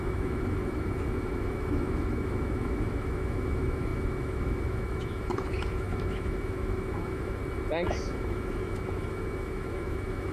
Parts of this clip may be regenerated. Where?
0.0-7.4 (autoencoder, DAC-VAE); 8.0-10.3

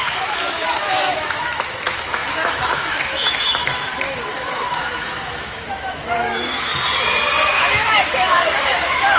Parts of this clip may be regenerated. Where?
0.0-6.7 (autoencoder, DAC-VAE); 7.5-9.2

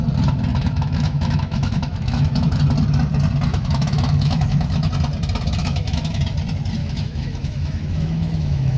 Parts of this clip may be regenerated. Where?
0.5-2.6 (autoencoder, DAC-VAE); 3.5-4.9; 5.6-6.2; 6.8-8.8

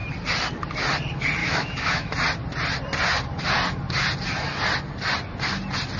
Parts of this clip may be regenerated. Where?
1.4-2.1 (autoencoder, DAC-VAE)

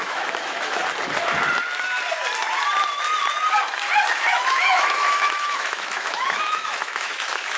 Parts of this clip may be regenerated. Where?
0.0-0.8 (autoencoder, DAC-VAE); 4.2-7.6

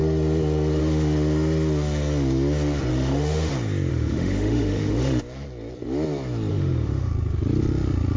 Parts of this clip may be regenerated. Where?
2.9-3.5 (autoencoder, DAC-VAE); 3.9-5.2; 6.5-7.1